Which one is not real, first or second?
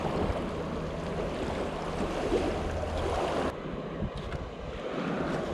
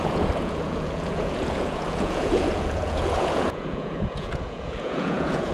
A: second